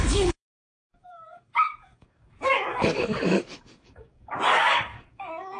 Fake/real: fake